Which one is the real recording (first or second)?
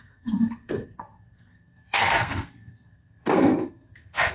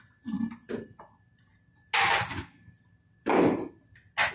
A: second